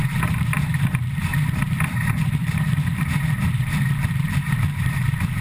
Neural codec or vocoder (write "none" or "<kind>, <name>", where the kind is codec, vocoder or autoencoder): vocoder, BigVGAN v2